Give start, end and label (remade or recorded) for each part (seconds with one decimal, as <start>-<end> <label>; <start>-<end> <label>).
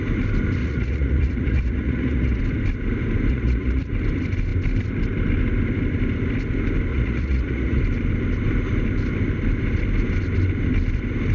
0.0-0.6 recorded; 0.6-2.4 remade; 2.4-3.3 recorded; 3.3-3.9 remade; 3.9-6.9 recorded; 6.9-7.8 remade; 7.8-11.3 recorded